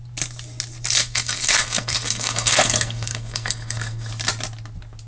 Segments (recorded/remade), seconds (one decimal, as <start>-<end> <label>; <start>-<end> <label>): 0.0-1.0 recorded; 1.0-4.1 remade; 4.1-5.1 recorded